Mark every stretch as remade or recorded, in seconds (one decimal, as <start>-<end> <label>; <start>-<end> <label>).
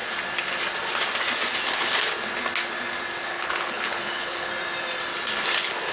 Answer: 0.0-3.3 recorded; 3.3-4.5 remade; 4.5-5.9 recorded